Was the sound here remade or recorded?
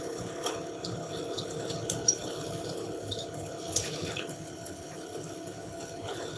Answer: remade